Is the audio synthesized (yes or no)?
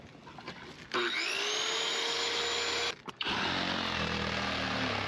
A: no